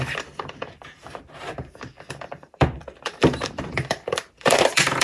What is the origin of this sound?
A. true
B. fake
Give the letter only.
B